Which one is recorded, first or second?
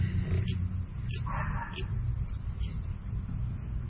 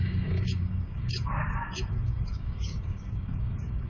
first